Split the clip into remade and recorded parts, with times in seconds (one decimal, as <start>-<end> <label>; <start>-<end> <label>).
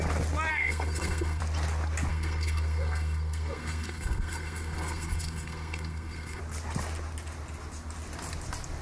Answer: 0.0-0.5 recorded; 0.5-1.4 remade; 1.4-2.1 recorded; 2.1-6.4 remade; 6.4-8.8 recorded